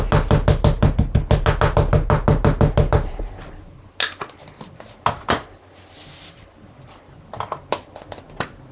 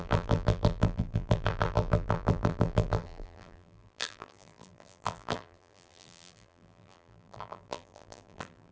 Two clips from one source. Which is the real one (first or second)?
first